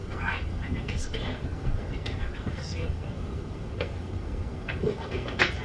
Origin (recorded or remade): remade